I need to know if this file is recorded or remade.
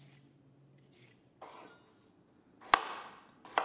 recorded